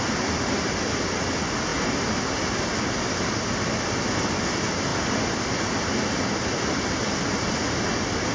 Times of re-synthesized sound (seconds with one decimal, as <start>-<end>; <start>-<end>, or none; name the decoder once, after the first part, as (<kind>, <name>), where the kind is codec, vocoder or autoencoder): none